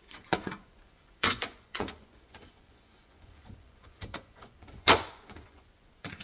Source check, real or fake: fake